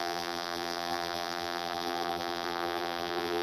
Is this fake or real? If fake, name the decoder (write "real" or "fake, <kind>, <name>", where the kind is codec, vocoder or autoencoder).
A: fake, vocoder, BigVGAN v2